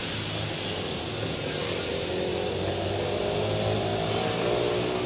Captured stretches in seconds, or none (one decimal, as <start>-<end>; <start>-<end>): 0.0-5.1